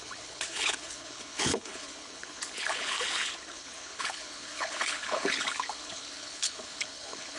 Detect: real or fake fake